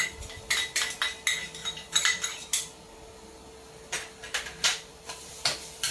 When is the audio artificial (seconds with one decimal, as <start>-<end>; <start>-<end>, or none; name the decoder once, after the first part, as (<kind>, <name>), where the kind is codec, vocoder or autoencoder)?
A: 1.6-2.9 (vocoder, BigVGAN v2); 4.7-5.4